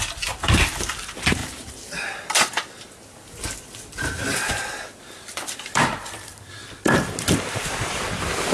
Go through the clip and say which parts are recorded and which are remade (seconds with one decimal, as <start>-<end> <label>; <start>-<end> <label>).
0.0-0.7 remade; 0.7-1.4 recorded; 1.4-6.5 remade; 6.5-8.5 recorded